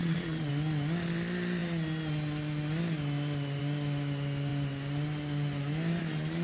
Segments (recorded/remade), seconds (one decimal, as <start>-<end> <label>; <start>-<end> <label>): 0.0-0.5 remade; 0.5-6.4 recorded